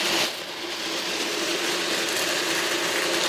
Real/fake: real